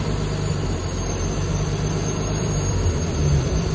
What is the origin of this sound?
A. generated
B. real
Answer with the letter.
A